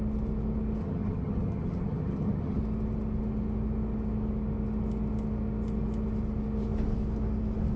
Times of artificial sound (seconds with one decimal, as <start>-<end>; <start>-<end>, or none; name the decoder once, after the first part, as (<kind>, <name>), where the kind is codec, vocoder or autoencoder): 0.8-2.6 (vocoder, HiFi-GAN)